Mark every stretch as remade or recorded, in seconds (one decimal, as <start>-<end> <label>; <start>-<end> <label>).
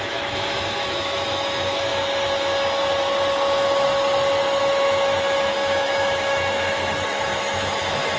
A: 0.0-1.9 remade; 1.9-4.6 recorded; 4.6-8.2 remade